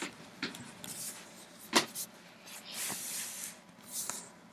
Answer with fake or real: real